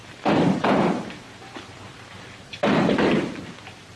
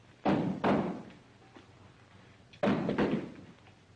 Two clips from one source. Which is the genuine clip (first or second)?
second